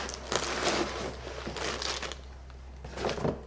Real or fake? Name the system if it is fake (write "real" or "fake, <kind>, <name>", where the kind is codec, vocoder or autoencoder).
real